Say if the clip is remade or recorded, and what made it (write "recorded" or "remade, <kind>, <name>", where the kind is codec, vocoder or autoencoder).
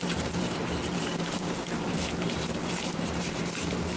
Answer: remade, vocoder, BigVGAN v2